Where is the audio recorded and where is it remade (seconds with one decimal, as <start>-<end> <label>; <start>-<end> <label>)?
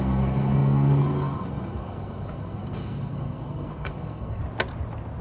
0.0-4.4 remade; 4.4-5.2 recorded